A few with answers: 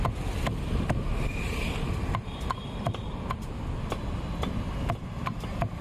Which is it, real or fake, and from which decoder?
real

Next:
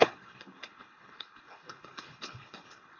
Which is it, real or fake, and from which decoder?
fake, codec, HILCodec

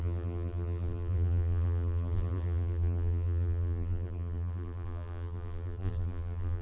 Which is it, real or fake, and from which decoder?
fake, vocoder, BigVGAN v2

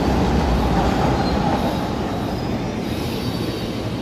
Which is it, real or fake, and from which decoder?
real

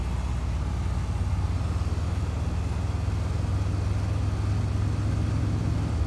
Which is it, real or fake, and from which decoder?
real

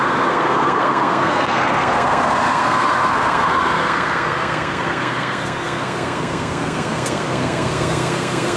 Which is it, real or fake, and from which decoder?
fake, codec, SNAC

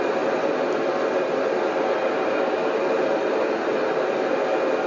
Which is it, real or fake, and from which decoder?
real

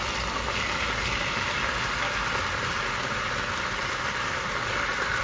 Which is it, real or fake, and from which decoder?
real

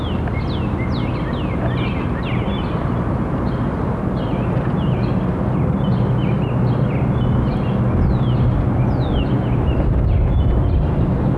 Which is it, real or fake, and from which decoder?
real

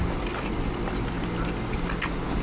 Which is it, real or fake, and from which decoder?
real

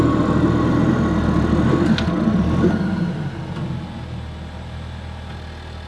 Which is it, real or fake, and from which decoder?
real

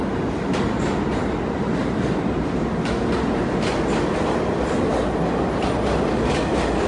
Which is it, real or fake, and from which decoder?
real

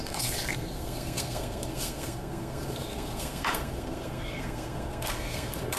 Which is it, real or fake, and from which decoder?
fake, codec, SNAC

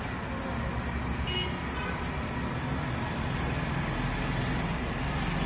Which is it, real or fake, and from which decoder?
real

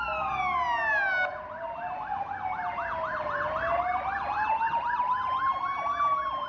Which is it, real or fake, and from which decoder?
real